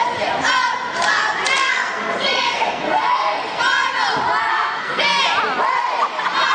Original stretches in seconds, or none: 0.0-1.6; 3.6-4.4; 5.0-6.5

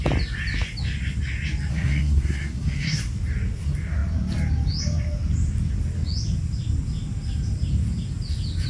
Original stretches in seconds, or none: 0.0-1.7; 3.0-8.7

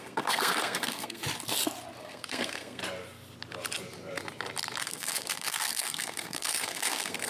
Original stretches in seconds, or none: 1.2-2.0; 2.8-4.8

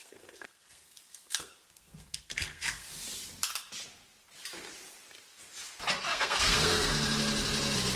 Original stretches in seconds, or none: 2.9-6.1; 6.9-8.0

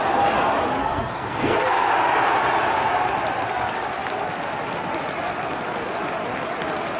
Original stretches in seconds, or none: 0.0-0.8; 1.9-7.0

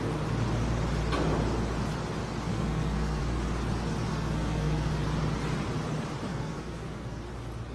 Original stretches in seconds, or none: 0.0-2.5; 3.2-4.1; 4.9-6.3; 7.2-7.7

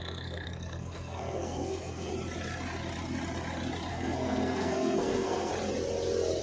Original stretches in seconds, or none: 2.1-3.9; 5.5-6.4

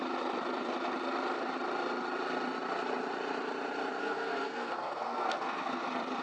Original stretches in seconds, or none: 0.0-4.0; 5.8-6.2